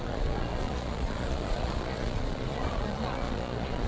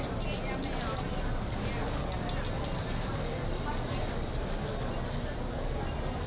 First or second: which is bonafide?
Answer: second